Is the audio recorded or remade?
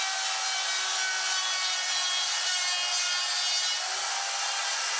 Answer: recorded